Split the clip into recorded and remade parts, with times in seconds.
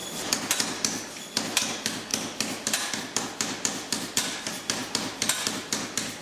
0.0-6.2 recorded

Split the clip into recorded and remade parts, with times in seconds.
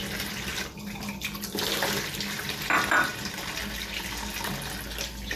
0.0-5.4 recorded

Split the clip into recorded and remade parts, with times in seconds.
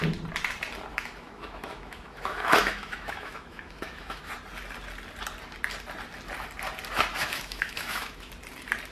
0.0-0.9 recorded; 0.9-4.3 remade; 4.3-7.1 recorded; 7.1-8.3 remade; 8.3-8.9 recorded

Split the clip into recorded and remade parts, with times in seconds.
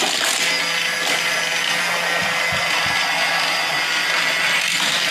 0.0-5.1 recorded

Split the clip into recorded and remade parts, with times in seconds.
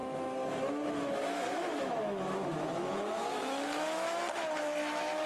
0.0-5.3 remade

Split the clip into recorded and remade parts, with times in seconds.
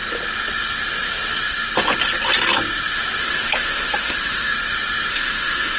0.0-3.2 recorded; 3.2-4.5 remade; 4.5-5.1 recorded; 5.1-5.8 remade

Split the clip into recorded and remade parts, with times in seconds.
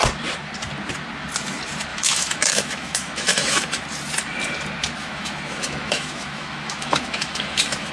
0.0-1.9 recorded; 1.9-3.8 remade; 3.8-5.0 recorded; 5.0-7.9 remade